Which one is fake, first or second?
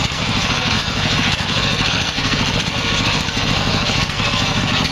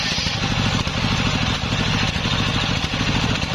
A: first